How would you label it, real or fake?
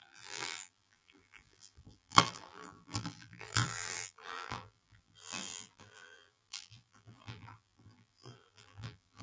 fake